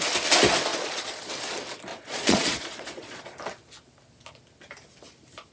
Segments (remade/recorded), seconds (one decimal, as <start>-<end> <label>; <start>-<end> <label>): 0.0-0.7 recorded; 0.7-1.3 remade; 1.3-1.9 recorded; 1.9-3.2 remade; 3.2-5.5 recorded

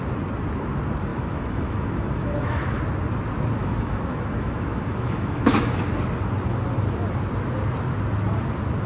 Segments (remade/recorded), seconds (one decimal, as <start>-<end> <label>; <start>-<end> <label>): 0.0-1.1 recorded; 1.1-2.8 remade; 2.8-3.6 recorded; 3.6-5.9 remade; 5.9-8.9 recorded

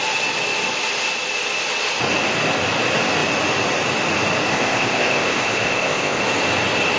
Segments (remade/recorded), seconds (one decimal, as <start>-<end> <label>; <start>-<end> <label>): 0.0-4.5 recorded; 4.5-6.2 remade; 6.2-7.0 recorded

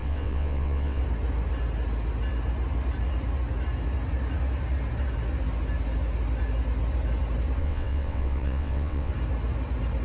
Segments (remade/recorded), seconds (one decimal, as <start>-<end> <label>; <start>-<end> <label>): 0.0-1.0 remade; 1.0-7.6 recorded; 7.6-9.1 remade; 9.1-10.0 recorded